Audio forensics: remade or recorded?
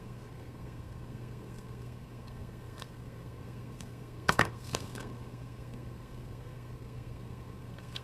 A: remade